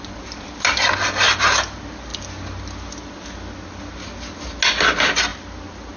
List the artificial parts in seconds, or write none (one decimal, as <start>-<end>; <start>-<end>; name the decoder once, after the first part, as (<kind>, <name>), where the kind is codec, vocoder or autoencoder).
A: none